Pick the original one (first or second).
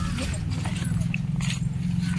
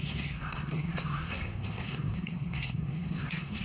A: first